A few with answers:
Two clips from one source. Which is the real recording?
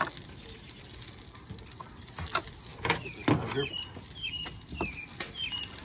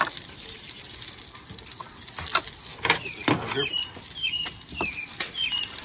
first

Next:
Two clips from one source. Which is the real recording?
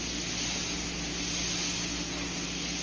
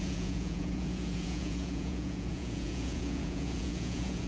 first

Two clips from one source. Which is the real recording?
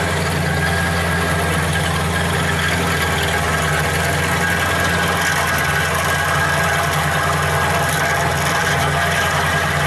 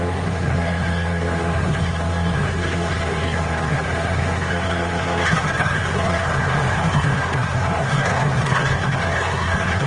first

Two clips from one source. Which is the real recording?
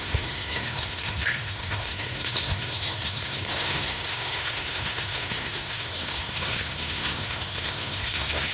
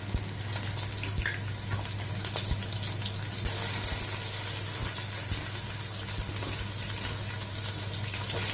second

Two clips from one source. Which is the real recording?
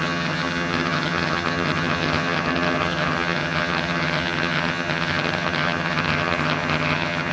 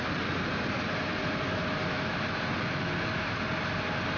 second